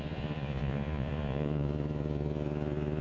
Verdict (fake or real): fake